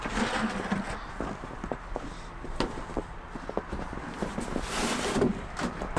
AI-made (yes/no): no